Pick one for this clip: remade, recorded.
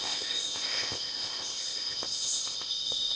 remade